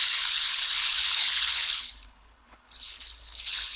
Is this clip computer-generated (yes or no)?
yes